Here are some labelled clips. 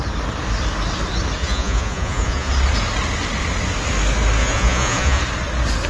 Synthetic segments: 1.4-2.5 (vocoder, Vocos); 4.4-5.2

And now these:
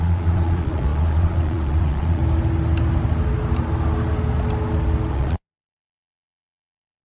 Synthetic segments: 0.0-2.2 (vocoder, Vocos); 5.1-7.0

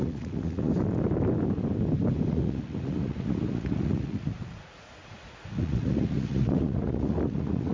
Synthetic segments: 0.0-0.7 (vocoder, Vocos); 2.3-7.7